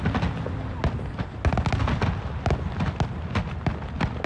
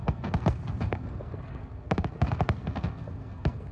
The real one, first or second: first